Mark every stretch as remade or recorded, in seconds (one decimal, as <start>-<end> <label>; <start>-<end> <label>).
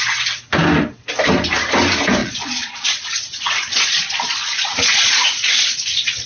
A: 0.0-2.2 recorded; 2.2-6.3 remade